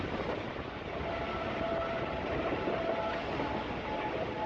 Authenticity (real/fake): real